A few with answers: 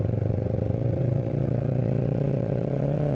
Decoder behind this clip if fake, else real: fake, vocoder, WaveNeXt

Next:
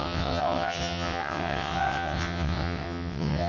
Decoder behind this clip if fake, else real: fake, vocoder, WaveNeXt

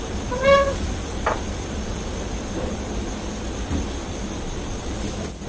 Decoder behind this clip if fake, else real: real